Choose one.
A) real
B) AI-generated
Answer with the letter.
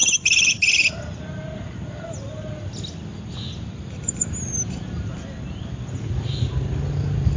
A